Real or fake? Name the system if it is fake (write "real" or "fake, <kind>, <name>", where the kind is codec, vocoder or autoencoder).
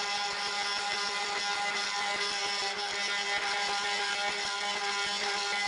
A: real